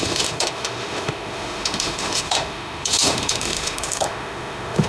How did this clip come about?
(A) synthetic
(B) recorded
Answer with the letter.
A